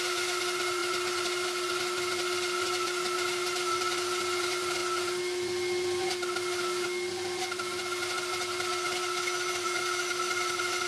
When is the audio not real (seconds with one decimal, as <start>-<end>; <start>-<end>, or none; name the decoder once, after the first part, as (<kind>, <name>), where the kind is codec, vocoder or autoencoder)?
none